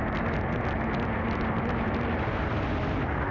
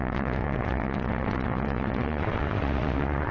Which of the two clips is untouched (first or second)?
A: first